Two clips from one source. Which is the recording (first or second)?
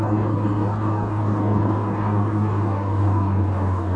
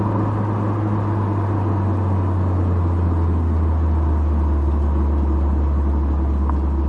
second